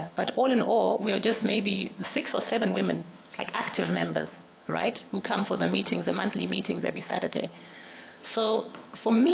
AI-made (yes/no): yes